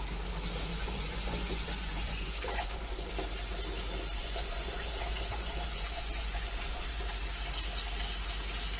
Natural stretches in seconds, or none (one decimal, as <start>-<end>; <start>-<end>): 0.0-0.7; 3.1-4.2; 7.0-8.8